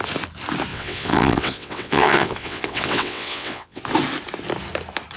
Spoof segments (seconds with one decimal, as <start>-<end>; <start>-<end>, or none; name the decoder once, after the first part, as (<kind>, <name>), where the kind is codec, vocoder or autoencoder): 0.7-3.8 (vocoder, WaveNeXt)